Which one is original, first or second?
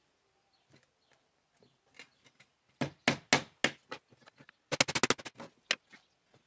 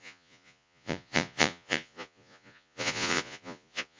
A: first